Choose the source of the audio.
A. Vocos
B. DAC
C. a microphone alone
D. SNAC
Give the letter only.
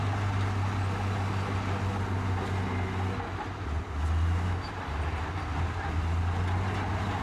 C